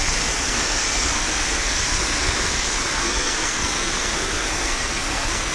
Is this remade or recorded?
remade